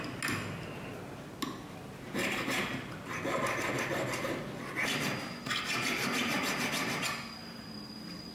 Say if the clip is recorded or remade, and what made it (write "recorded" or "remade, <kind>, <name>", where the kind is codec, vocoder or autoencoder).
recorded